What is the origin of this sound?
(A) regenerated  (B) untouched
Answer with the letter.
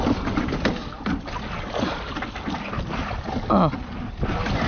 B